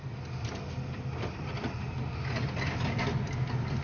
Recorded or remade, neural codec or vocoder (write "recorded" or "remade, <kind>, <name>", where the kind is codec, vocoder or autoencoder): recorded